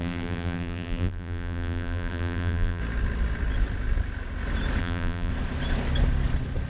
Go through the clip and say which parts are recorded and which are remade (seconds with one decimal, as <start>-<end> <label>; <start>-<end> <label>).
0.0-2.8 remade; 2.8-4.8 recorded; 4.8-5.3 remade; 5.3-6.7 recorded